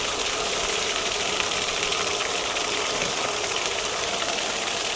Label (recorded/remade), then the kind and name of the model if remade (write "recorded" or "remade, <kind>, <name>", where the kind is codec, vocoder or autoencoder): recorded